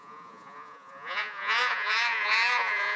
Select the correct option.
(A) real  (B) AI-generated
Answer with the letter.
B